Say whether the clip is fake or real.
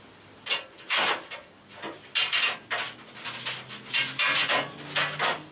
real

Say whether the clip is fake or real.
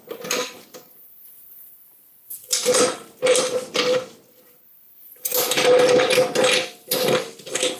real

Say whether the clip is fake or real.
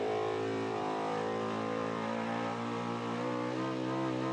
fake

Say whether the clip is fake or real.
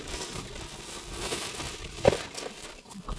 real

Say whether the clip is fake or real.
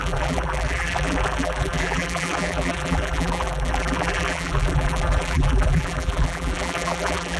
fake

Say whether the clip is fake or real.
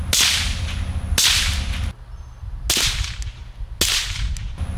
real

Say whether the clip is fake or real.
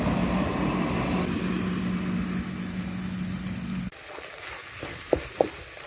real